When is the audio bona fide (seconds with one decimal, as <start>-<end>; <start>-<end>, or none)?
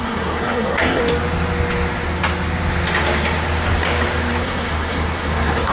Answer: 1.0-4.4